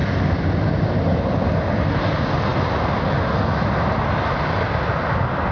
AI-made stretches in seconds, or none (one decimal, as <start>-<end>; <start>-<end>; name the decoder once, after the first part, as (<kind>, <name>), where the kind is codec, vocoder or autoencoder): none